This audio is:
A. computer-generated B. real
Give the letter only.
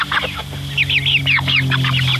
B